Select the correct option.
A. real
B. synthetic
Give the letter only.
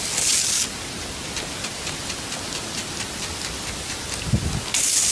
A